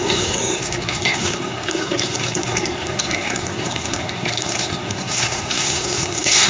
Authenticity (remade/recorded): remade